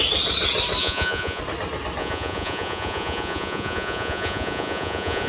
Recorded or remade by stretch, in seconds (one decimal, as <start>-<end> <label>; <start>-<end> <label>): 0.0-0.8 recorded; 0.8-1.4 remade; 1.4-2.0 recorded; 2.0-5.3 remade